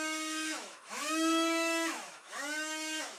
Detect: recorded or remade remade